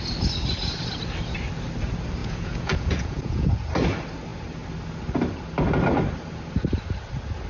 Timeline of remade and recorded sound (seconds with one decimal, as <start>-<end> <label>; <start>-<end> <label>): 0.0-2.2 recorded; 2.2-3.5 remade; 3.5-7.5 recorded